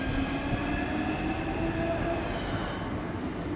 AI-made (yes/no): no